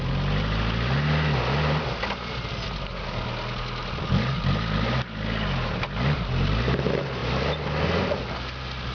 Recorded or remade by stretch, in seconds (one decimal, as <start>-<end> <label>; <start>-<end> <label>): 0.0-8.9 recorded